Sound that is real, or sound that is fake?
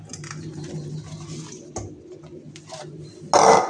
real